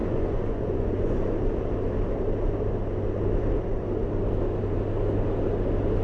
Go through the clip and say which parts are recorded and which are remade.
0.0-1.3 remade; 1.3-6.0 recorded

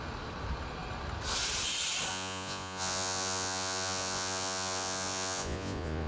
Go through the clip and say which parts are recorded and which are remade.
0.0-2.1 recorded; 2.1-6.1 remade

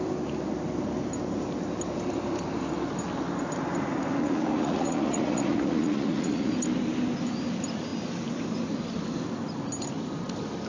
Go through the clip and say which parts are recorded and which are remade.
0.0-4.2 recorded; 4.2-6.5 remade; 6.5-10.7 recorded

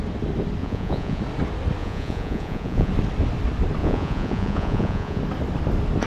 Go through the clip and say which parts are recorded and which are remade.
0.0-0.6 recorded; 0.6-1.2 remade; 1.2-1.8 recorded; 1.8-2.9 remade; 2.9-3.8 recorded; 3.8-5.2 remade; 5.2-6.1 recorded

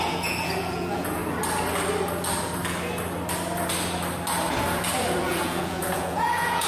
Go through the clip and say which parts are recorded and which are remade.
0.0-1.2 remade; 1.2-5.2 recorded; 5.2-6.7 remade